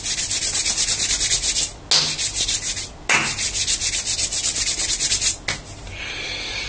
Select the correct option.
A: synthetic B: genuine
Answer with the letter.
B